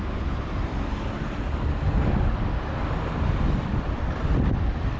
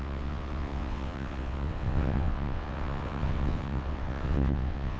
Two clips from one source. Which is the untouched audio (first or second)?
first